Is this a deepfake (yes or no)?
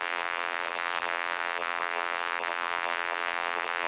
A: yes